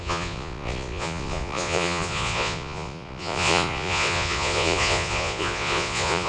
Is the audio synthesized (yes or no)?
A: yes